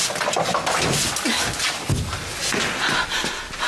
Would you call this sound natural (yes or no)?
yes